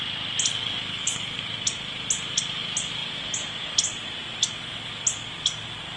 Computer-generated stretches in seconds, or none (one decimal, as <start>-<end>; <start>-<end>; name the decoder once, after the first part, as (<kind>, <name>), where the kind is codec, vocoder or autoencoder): 0.9-1.4 (codec, SNAC)